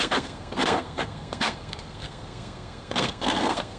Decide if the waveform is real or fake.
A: fake